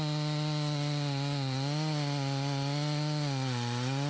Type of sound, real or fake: real